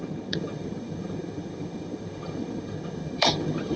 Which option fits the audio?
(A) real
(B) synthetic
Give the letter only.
B